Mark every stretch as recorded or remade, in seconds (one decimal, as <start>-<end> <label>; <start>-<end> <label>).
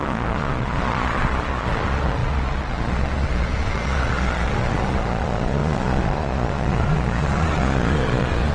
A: 0.0-8.5 remade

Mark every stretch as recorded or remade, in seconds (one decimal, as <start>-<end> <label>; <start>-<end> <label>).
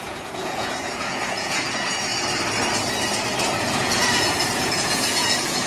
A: 0.0-2.1 remade; 2.1-3.6 recorded; 3.6-5.7 remade